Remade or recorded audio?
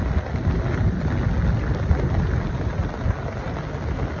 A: recorded